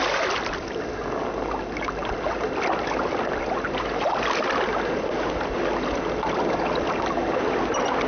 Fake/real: real